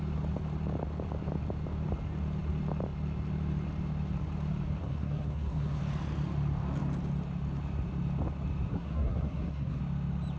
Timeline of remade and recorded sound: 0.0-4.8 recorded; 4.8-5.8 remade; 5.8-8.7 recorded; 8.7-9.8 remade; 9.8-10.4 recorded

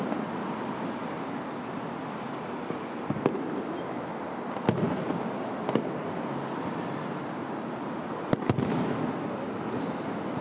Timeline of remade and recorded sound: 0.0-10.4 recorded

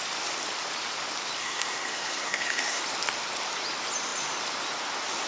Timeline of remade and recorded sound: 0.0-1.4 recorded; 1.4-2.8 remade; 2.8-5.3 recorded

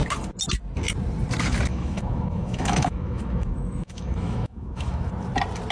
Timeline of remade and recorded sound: 0.0-1.7 recorded; 1.7-5.1 remade; 5.1-5.7 recorded